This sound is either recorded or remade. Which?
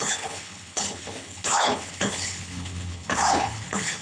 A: remade